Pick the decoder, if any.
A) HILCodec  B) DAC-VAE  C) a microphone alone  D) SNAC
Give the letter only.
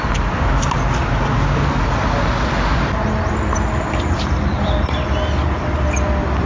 C